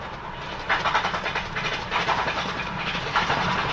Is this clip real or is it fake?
real